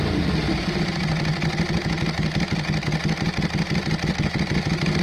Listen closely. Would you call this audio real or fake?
real